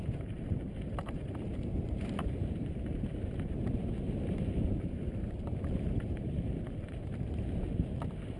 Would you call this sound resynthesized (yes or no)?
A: yes